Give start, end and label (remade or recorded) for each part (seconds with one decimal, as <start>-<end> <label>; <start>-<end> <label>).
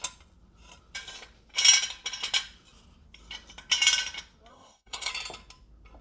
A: 0.0-4.5 recorded; 4.5-5.1 remade; 5.1-6.0 recorded